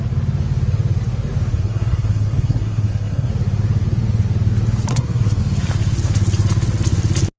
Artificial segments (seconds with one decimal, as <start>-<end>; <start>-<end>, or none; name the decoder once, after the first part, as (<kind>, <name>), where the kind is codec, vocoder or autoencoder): 1.5-3.3 (codec, SNAC); 4.9-5.4